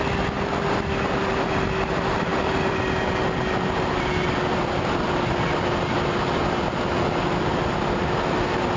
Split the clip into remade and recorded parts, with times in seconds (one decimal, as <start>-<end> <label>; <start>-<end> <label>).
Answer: 0.0-8.8 recorded